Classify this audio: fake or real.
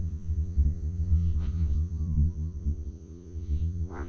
fake